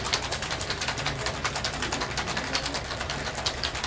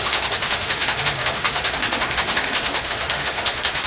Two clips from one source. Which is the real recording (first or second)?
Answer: first